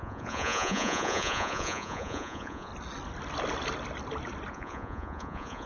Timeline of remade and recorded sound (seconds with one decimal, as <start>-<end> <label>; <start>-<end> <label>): 0.0-2.7 remade; 2.7-4.5 recorded; 4.5-5.7 remade